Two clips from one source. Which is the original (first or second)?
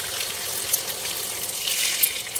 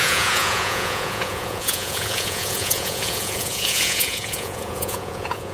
first